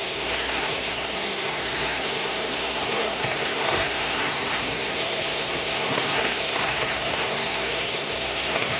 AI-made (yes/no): yes